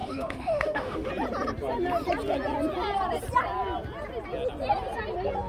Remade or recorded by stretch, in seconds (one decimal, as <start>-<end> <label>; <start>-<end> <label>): 0.0-1.1 remade; 1.1-5.5 recorded